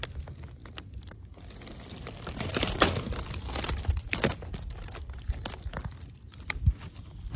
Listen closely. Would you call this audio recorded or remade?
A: recorded